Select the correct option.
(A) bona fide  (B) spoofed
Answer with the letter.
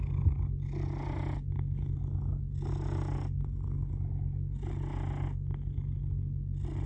A